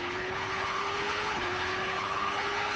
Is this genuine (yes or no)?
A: no